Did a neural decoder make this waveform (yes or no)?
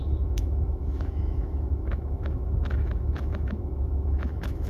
yes